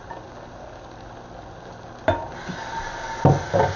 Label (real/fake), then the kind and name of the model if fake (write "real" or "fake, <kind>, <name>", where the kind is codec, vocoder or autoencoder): real